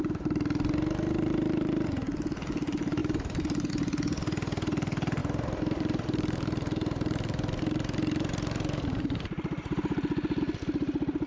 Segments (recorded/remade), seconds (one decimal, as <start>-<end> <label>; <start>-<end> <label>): 0.0-3.0 recorded; 3.0-3.7 remade; 3.7-5.2 recorded; 5.2-10.4 remade; 10.4-11.3 recorded